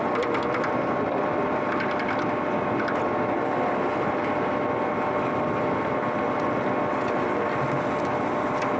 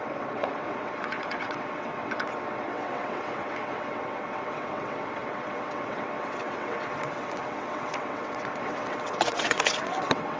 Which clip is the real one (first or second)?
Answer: first